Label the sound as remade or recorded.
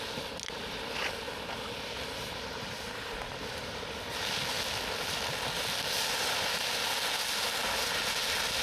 recorded